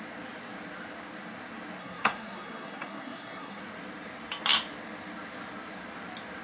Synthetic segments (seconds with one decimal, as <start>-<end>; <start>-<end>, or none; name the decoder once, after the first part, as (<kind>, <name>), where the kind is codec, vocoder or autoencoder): 1.8-3.6 (codec, SNAC)